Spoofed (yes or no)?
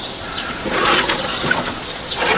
yes